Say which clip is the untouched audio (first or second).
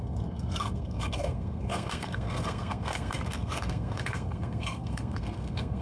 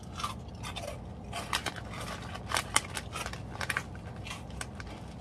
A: second